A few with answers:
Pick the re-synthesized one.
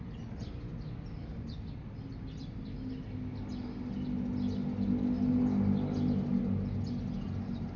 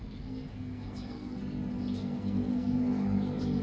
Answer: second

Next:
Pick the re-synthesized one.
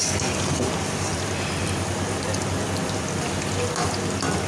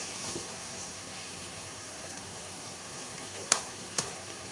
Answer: second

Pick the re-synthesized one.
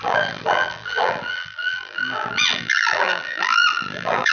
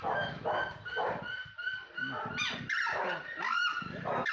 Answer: first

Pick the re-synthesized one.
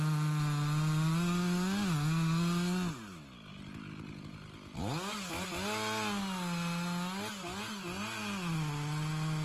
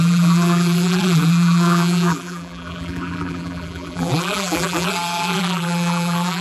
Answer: second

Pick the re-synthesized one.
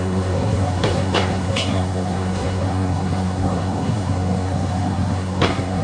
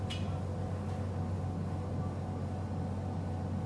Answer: first